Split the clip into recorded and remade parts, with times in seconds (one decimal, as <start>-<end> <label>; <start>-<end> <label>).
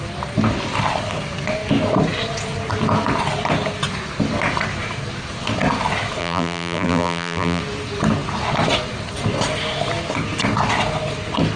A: 0.0-6.2 recorded; 6.2-7.6 remade; 7.6-11.6 recorded